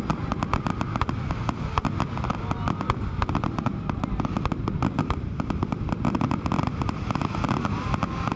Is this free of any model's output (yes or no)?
yes